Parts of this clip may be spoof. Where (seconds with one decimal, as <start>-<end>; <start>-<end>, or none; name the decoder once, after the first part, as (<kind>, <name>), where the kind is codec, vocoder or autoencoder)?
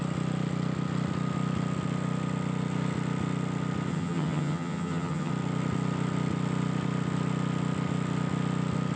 3.9-5.3 (vocoder, HiFi-GAN)